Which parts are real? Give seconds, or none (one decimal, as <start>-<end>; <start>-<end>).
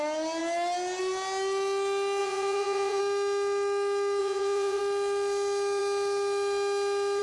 0.0-2.2; 3.0-4.2; 4.8-7.2